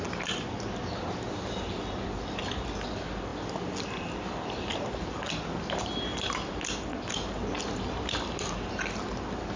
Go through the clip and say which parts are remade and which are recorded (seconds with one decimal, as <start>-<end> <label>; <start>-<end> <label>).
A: 0.0-9.6 recorded